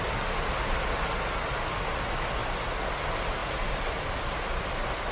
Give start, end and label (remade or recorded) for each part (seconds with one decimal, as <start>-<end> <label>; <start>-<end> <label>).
0.0-5.1 recorded